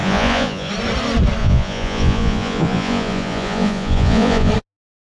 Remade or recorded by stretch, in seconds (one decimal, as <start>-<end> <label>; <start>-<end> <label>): 0.0-0.7 remade; 0.7-1.4 recorded; 1.4-4.5 remade; 4.5-5.2 recorded